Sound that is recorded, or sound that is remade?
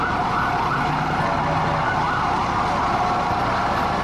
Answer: recorded